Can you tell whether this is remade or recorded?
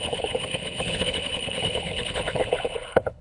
remade